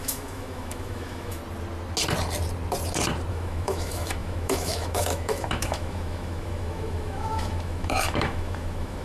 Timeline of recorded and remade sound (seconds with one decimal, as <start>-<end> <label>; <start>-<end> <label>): 0.0-1.4 remade; 1.4-3.3 recorded; 3.3-9.0 remade